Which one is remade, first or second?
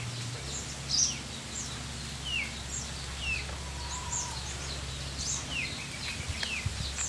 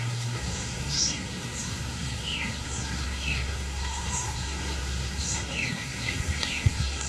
second